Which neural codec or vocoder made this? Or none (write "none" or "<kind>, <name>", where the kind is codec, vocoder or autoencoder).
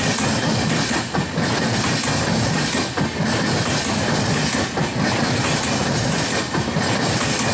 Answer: none